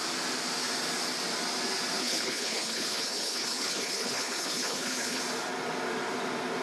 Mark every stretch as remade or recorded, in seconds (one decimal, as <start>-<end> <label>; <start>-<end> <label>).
0.0-2.0 recorded; 2.0-5.2 remade; 5.2-6.6 recorded